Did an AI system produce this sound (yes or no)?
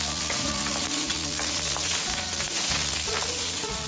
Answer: yes